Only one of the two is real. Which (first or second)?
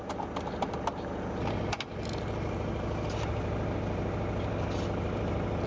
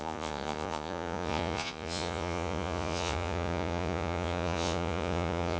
first